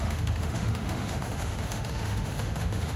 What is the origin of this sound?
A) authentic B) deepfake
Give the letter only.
B